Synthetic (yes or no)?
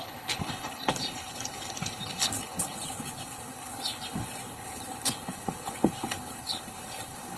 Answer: yes